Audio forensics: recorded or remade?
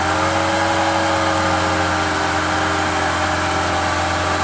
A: recorded